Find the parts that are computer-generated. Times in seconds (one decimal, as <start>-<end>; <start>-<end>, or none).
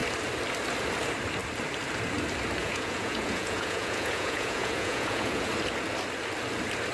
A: 2.6-5.5